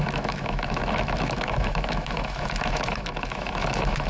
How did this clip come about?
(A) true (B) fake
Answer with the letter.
B